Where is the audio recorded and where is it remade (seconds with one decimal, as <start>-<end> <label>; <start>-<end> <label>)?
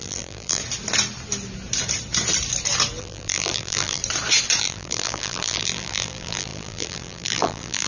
0.0-0.6 remade; 0.6-3.0 recorded; 3.0-4.0 remade; 4.0-4.6 recorded; 4.6-7.9 remade